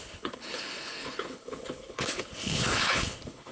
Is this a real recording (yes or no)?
no